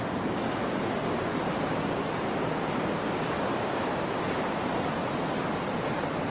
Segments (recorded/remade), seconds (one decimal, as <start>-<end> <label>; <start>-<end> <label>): 0.0-6.3 recorded